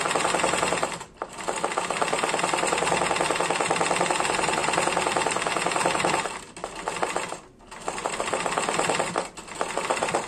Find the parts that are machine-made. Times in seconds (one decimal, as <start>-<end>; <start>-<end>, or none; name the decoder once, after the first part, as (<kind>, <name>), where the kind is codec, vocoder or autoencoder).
none

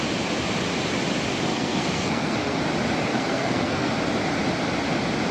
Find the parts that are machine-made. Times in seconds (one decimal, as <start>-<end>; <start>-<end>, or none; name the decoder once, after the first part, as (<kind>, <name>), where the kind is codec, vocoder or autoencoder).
1.5-2.6 (codec, SNAC); 3.1-3.9

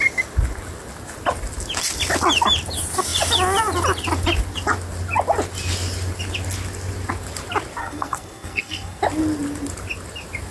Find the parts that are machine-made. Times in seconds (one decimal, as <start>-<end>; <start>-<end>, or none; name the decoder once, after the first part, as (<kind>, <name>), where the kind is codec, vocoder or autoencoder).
7.8-9.0 (codec, SNAC)

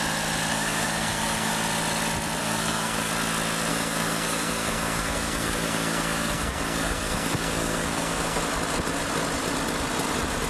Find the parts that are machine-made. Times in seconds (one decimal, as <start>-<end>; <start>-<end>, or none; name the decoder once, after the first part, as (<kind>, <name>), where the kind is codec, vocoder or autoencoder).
0.5-1.5 (codec, SNAC); 2.4-3.1; 3.7-8.4

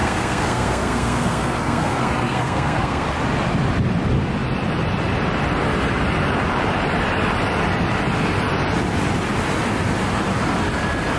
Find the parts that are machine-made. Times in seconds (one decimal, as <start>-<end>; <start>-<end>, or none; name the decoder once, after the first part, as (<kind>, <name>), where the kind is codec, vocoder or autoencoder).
0.0-3.2 (codec, SNAC)